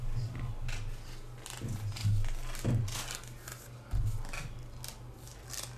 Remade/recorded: recorded